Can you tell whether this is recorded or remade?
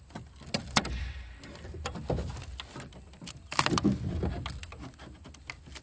recorded